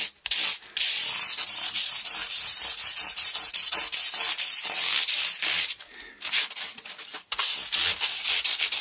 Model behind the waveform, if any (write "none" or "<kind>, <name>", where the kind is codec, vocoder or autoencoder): none